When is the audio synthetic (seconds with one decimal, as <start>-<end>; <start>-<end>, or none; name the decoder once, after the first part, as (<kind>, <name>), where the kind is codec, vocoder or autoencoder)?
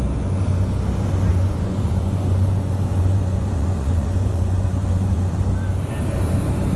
1.3-5.4 (vocoder, Vocos)